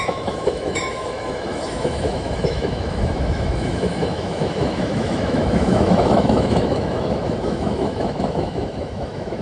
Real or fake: fake